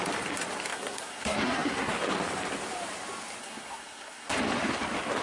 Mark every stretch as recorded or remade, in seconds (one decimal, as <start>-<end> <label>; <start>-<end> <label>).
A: 0.0-0.7 recorded; 0.7-1.9 remade; 1.9-3.4 recorded; 3.4-4.3 remade; 4.3-5.2 recorded